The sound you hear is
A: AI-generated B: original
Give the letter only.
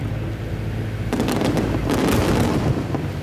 B